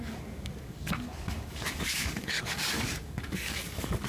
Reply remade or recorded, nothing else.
remade